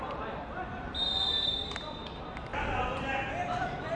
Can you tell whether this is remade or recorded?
recorded